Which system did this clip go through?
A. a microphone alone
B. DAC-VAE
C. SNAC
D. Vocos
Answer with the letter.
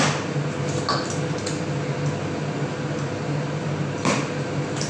A